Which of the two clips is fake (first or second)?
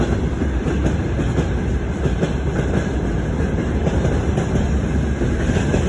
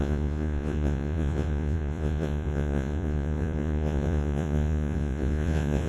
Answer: second